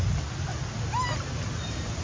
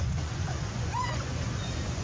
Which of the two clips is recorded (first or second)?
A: first